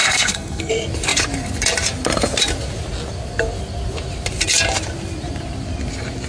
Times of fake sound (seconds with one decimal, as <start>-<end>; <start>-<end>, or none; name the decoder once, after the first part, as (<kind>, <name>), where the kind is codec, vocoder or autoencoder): 0.0-0.7 (codec, SNAC)